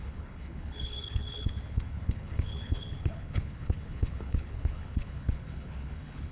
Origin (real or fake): fake